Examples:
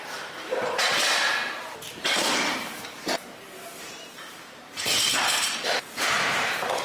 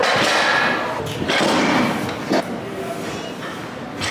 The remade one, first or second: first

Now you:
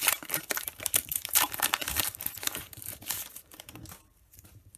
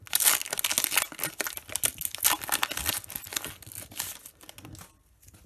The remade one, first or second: first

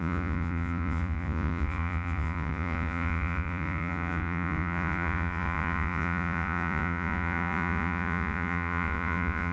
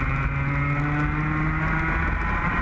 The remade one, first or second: first